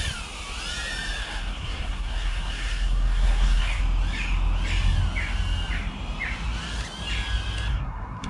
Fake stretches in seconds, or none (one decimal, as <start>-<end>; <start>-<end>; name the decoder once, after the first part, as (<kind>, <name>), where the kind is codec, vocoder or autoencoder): 1.2-3.8 (codec, SNAC); 7.7-8.3